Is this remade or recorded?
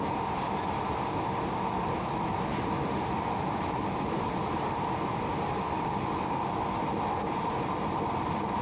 recorded